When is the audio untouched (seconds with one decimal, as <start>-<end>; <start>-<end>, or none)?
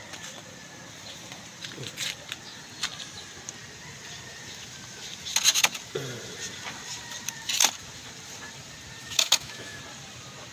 0.0-9.0; 9.8-10.5